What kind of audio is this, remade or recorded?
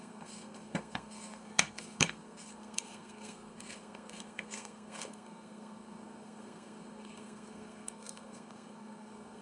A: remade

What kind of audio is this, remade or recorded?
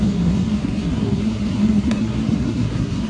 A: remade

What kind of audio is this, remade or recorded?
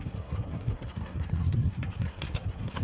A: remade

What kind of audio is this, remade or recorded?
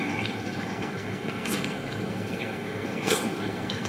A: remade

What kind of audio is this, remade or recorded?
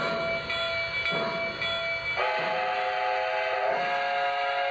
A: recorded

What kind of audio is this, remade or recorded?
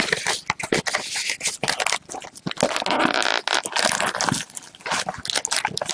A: recorded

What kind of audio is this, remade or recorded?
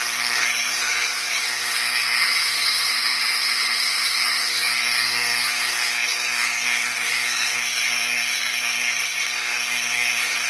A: remade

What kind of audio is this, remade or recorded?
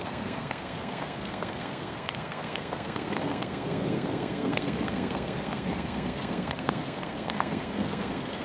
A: remade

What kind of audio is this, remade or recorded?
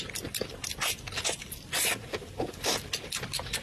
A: recorded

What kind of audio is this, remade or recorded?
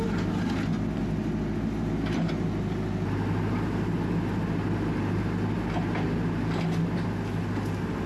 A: recorded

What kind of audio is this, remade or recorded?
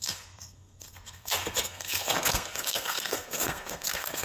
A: remade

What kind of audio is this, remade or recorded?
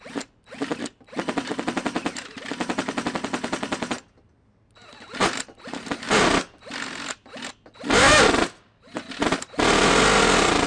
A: recorded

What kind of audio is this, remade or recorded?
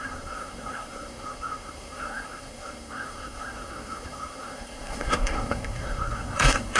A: remade